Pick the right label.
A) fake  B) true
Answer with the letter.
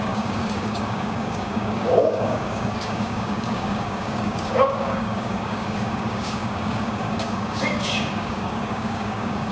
A